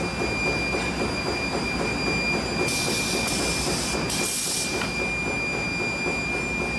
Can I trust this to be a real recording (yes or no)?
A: yes